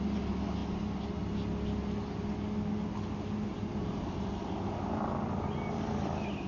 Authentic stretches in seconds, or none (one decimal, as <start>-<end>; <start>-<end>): 0.0-3.5; 4.3-6.5